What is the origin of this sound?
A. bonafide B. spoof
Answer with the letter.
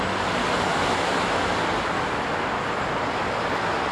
A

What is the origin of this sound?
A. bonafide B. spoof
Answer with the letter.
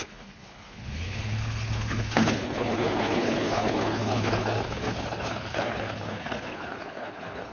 B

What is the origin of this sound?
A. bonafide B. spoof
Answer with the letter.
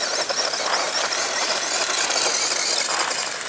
A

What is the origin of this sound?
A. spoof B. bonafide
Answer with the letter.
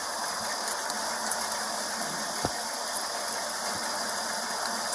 B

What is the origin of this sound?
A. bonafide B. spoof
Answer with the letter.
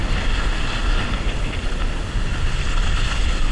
A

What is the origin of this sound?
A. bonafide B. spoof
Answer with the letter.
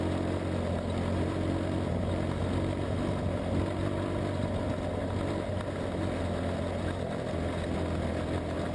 A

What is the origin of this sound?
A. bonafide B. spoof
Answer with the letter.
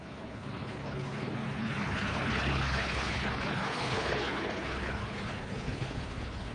B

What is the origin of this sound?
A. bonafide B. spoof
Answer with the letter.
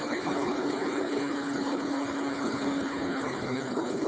B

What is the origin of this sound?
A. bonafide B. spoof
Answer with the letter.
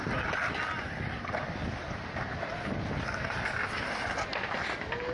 A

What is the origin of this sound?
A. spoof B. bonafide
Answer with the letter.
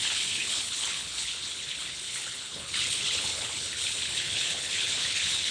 A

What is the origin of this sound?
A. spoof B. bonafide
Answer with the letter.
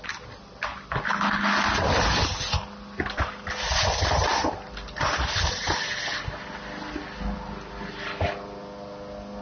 B